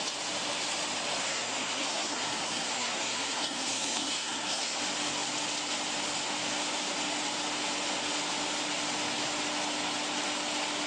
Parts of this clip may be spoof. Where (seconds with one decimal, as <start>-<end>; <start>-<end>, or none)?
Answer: 1.2-4.8

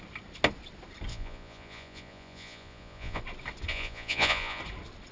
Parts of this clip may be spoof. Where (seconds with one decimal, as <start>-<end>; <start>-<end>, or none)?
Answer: 1.1-3.2; 3.7-4.6